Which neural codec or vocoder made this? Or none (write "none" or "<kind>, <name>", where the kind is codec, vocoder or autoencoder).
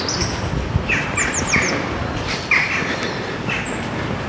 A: none